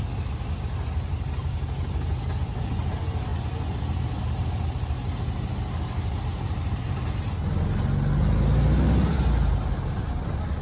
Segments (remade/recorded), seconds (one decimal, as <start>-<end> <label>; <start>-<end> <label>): 0.0-10.6 recorded